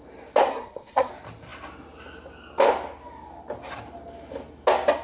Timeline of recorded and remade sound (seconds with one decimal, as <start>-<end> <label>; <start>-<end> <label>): 0.0-0.5 recorded; 0.5-1.1 remade; 1.1-5.0 recorded